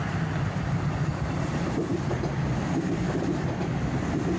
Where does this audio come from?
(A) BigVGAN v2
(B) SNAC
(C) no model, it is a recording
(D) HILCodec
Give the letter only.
C